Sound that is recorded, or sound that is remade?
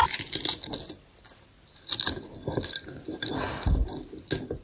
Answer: recorded